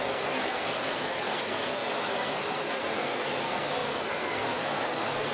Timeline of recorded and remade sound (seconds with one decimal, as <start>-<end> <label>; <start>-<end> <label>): 0.0-5.3 remade